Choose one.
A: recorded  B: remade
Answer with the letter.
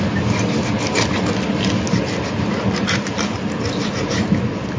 A